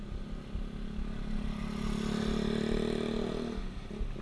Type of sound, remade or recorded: recorded